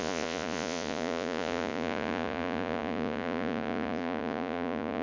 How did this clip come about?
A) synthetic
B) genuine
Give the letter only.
A